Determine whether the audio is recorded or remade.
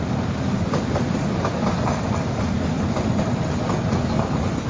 recorded